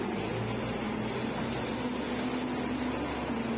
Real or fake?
real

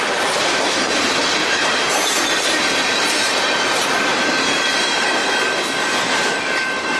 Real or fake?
fake